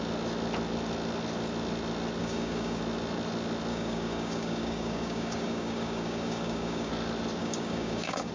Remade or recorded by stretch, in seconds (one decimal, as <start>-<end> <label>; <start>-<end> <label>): 0.0-2.2 recorded; 2.2-2.8 remade; 2.8-3.7 recorded; 3.7-6.9 remade; 6.9-7.4 recorded; 7.4-8.3 remade

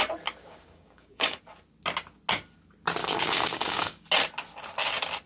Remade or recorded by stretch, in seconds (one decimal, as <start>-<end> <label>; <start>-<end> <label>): 0.0-0.4 recorded; 0.4-1.4 remade; 1.4-3.0 recorded; 3.0-4.0 remade; 4.0-5.3 recorded

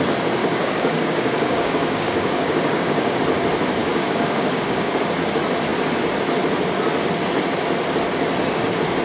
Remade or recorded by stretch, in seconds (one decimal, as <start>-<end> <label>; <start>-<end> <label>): 0.0-0.4 recorded; 0.4-3.2 remade; 3.2-3.8 recorded; 3.8-5.0 remade; 5.0-9.0 recorded